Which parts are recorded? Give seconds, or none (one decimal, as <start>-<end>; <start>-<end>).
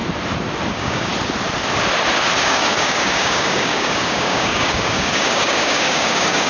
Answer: 0.0-0.7; 1.1-2.4